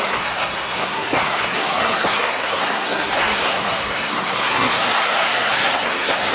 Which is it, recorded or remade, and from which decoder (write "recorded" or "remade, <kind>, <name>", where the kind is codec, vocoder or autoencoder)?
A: remade, codec, SNAC